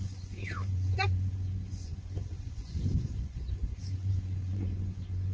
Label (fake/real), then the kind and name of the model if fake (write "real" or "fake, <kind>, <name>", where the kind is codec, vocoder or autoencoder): fake, vocoder, Vocos